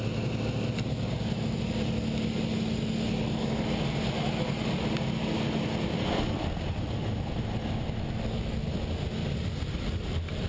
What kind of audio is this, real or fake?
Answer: real